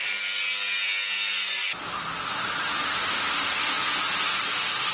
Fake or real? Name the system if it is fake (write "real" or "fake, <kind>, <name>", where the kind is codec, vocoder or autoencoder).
real